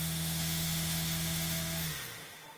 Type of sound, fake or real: fake